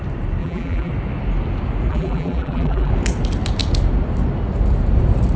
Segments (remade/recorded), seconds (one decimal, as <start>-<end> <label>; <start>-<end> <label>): 0.0-0.4 recorded; 0.4-0.9 remade; 0.9-1.9 recorded; 1.9-2.9 remade; 2.9-5.4 recorded